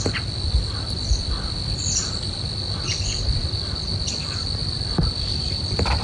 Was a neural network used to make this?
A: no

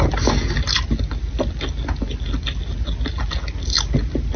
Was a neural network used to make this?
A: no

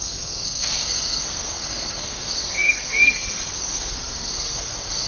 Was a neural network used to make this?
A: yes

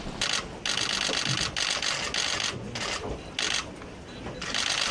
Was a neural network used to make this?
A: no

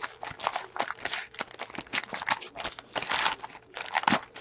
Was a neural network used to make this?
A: no